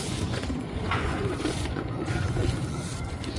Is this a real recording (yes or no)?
no